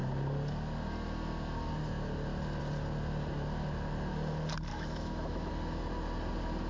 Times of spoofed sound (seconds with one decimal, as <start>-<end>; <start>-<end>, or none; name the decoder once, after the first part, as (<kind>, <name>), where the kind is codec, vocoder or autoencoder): 4.7-5.5 (autoencoder, DAC-VAE)